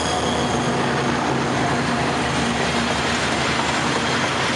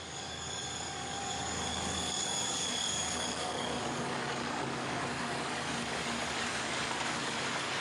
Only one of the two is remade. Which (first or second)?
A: second